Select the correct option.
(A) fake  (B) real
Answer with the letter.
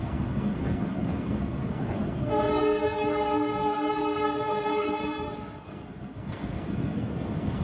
A